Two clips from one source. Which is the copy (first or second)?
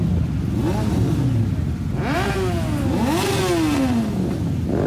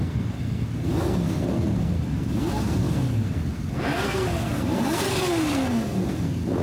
second